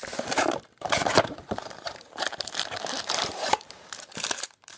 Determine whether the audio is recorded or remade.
remade